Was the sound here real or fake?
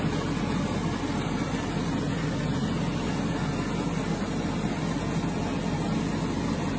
real